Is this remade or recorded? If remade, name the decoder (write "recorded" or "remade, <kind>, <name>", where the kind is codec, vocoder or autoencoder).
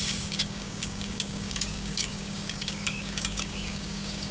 remade, codec, DAC